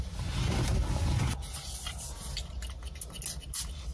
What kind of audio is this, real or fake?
real